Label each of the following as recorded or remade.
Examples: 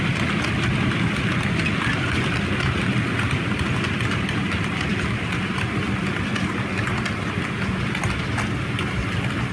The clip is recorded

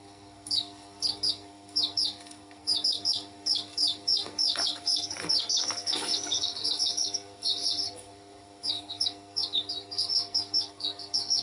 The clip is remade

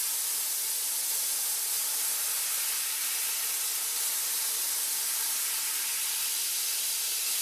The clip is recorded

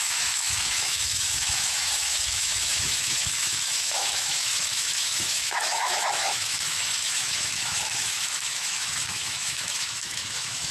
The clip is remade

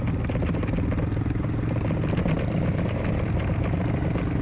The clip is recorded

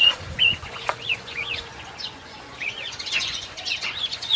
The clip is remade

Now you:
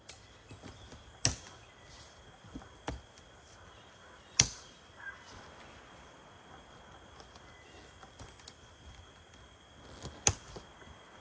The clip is recorded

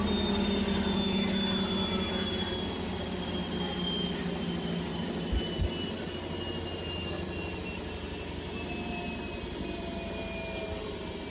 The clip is recorded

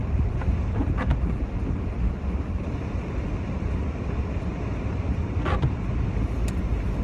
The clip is recorded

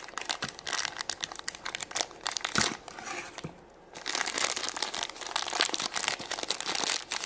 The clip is recorded